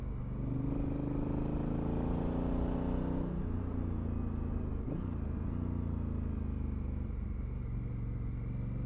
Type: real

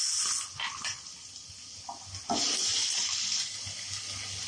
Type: real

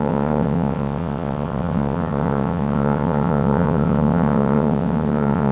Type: fake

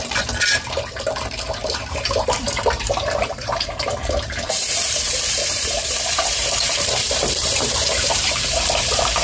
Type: fake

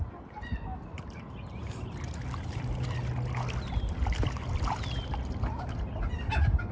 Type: real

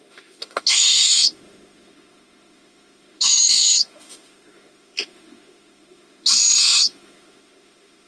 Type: fake